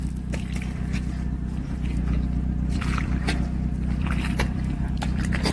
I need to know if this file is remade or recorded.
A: remade